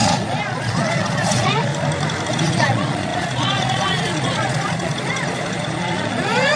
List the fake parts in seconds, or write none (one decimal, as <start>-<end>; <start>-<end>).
0.0-1.7; 2.3-6.6